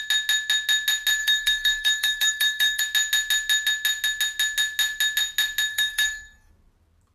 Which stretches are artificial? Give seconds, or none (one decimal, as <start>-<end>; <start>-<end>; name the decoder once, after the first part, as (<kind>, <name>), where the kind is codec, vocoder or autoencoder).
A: 1.2-2.8 (codec, DAC); 5.7-6.5